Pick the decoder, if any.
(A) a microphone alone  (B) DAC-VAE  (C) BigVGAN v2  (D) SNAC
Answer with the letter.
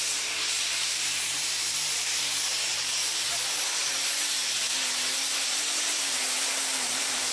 C